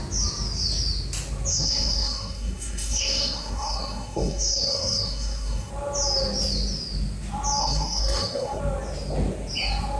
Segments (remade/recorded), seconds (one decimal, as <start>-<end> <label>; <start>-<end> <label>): 0.0-1.5 recorded; 1.5-5.7 remade; 5.7-7.6 recorded; 7.6-8.6 remade; 8.6-10.0 recorded